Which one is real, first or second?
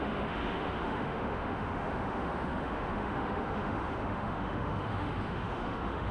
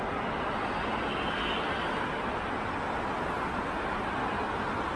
second